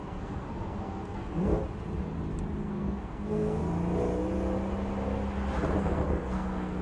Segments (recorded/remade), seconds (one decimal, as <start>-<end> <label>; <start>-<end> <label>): 0.0-1.6 remade; 1.6-2.6 recorded; 2.6-3.6 remade; 3.6-5.8 recorded; 5.8-6.8 remade